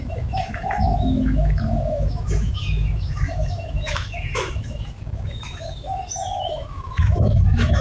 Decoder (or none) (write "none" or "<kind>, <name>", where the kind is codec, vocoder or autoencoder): autoencoder, DAC-VAE